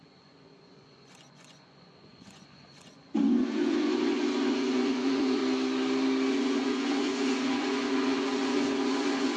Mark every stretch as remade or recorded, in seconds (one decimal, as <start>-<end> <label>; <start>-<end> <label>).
0.0-5.4 remade; 5.4-6.3 recorded; 6.3-9.4 remade